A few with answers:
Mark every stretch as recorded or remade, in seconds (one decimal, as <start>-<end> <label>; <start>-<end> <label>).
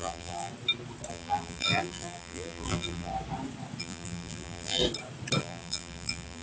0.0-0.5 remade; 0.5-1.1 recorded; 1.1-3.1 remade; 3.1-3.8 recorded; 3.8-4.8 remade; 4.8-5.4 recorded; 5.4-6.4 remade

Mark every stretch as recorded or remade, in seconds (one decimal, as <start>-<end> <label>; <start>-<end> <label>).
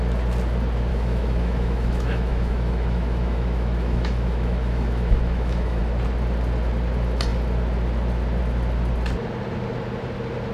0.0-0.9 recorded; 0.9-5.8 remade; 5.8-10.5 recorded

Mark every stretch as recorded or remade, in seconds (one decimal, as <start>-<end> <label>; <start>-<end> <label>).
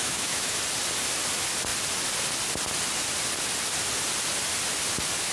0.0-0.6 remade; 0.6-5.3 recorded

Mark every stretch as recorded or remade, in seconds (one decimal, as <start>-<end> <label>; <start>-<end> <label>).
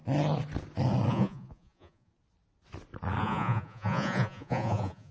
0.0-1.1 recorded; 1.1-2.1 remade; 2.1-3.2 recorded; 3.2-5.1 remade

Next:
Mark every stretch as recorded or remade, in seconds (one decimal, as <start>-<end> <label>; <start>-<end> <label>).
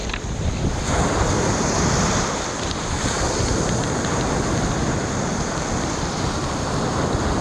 0.0-7.4 recorded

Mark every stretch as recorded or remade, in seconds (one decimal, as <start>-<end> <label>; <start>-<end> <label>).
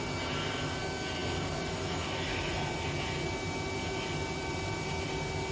0.0-5.5 recorded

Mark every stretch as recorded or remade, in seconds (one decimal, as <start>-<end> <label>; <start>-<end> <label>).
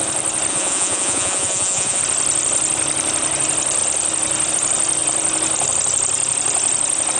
0.0-0.5 recorded; 0.5-2.0 remade; 2.0-7.2 recorded